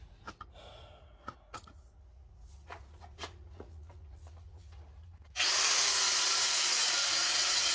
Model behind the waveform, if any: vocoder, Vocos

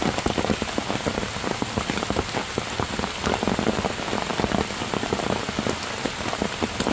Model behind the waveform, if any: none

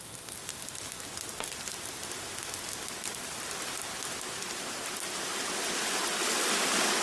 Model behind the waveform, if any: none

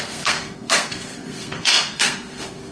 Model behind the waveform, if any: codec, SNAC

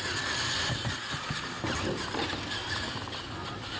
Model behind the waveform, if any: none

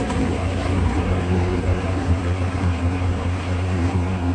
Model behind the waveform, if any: codec, SNAC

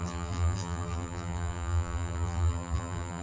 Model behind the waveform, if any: vocoder, BigVGAN v2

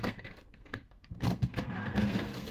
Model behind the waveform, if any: codec, SNAC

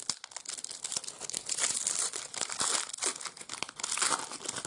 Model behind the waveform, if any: none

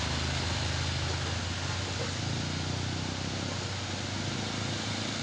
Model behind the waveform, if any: none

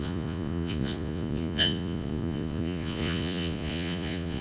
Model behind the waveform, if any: vocoder, Vocos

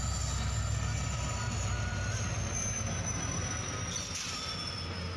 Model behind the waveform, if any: none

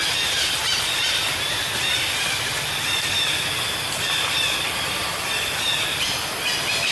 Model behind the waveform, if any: vocoder, BigVGAN v2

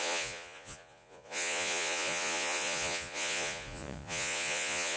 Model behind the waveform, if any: vocoder, Vocos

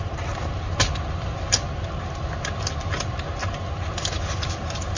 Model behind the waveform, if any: none